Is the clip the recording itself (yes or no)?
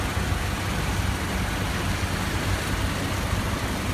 yes